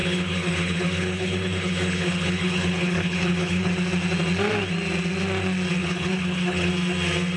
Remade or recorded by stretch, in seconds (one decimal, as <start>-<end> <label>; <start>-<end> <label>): 0.0-3.7 remade; 3.7-5.8 recorded; 5.8-6.7 remade; 6.7-7.4 recorded